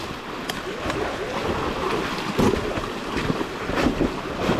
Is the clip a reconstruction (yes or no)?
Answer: no